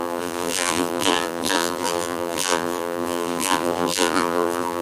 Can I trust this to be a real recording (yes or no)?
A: no